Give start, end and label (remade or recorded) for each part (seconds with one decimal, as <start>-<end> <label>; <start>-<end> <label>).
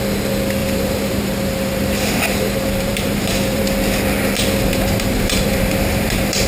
0.0-0.6 recorded; 0.6-3.6 remade; 3.6-4.7 recorded; 4.7-6.5 remade